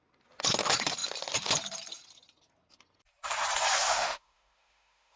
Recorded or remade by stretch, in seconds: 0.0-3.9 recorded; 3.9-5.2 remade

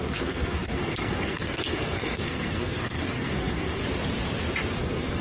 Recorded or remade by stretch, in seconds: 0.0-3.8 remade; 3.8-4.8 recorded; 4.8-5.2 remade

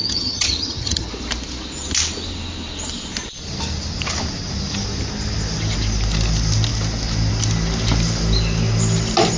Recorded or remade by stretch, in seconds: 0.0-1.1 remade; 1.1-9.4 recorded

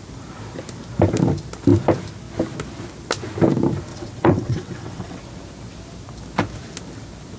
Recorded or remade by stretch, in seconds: 0.0-3.9 recorded; 3.9-5.2 remade; 5.2-7.4 recorded

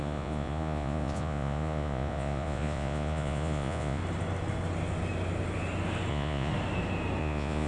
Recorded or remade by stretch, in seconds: 0.0-4.0 remade; 4.0-6.1 recorded; 6.1-6.5 remade; 6.5-7.2 recorded; 7.2-7.7 remade